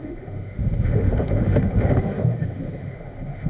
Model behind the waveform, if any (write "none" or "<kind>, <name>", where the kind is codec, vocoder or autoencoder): autoencoder, DAC-VAE